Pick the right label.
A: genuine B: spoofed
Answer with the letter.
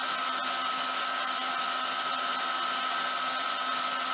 A